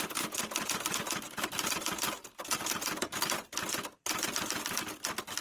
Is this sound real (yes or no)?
yes